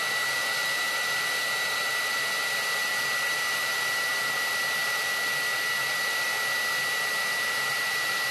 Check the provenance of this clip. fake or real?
real